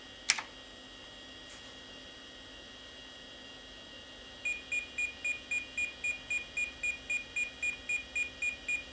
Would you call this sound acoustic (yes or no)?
yes